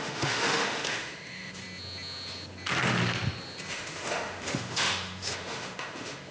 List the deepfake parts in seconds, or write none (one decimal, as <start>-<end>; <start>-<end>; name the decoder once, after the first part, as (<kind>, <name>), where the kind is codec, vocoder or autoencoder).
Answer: 0.0-1.6 (autoencoder, DAC-VAE); 3.7-6.3